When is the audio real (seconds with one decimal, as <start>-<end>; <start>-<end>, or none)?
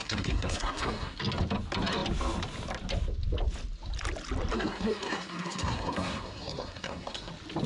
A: 1.2-4.5; 7.3-7.7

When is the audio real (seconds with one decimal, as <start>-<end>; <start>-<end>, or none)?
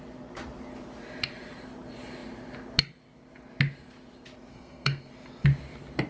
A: 0.0-4.5; 5.1-6.1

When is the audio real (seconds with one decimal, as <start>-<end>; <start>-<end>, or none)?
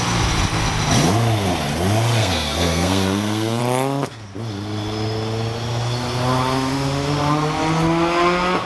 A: 0.0-2.2; 3.6-8.7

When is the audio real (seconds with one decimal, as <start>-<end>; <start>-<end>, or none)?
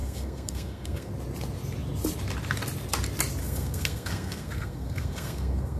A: 1.1-3.4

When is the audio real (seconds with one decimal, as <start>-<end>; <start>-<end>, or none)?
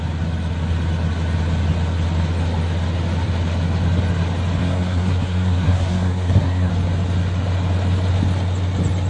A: 0.0-4.6; 6.7-9.1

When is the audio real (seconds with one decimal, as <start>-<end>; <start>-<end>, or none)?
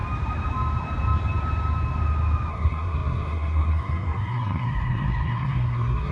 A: 0.0-2.5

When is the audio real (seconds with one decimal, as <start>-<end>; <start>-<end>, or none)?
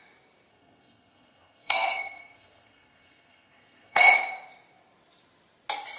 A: 0.0-0.5; 4.0-6.0